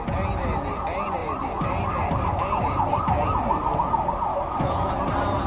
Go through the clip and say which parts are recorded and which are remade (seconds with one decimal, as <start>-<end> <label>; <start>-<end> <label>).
0.0-4.3 recorded; 4.3-4.9 remade; 4.9-5.5 recorded